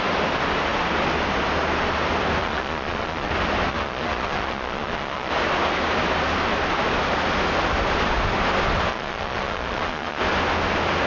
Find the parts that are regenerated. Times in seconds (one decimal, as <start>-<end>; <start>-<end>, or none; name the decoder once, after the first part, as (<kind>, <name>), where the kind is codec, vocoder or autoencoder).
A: 2.4-3.3 (vocoder, Vocos); 3.7-5.3; 8.9-10.2